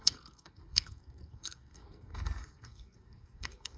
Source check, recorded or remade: remade